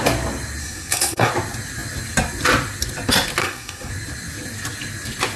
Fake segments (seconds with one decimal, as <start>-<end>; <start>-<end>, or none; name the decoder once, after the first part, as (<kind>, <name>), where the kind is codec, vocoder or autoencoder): 0.6-1.3 (codec, SNAC); 3.4-3.9